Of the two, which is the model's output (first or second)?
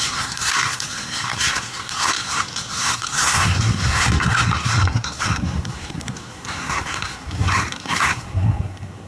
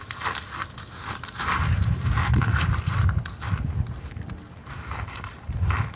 first